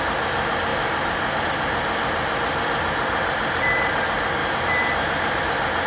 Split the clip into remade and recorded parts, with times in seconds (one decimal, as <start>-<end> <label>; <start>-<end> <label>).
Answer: 0.0-0.7 recorded; 0.7-1.5 remade; 1.5-4.4 recorded; 4.4-5.4 remade; 5.4-5.9 recorded